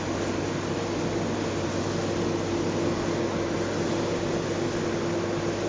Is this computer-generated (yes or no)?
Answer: no